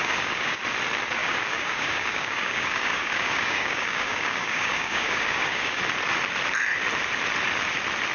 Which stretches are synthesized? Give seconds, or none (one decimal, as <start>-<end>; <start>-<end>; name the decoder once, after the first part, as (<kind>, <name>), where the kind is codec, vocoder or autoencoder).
0.0-0.6 (codec, DAC); 1.2-5.8